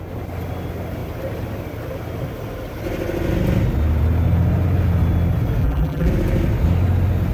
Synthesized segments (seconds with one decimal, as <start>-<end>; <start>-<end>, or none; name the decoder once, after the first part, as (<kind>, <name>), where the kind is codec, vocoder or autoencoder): 5.6-6.1 (vocoder, BigVGAN v2)